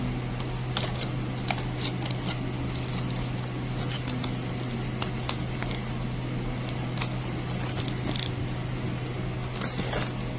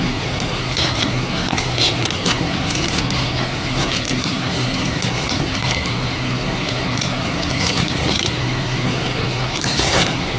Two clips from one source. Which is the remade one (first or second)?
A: second